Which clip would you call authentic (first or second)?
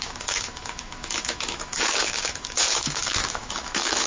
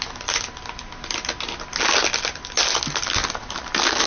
second